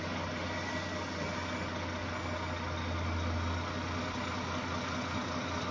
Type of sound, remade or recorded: recorded